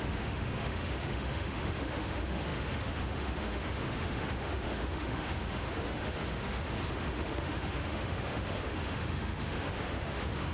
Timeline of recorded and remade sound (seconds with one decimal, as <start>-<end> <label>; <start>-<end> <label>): 0.0-10.5 remade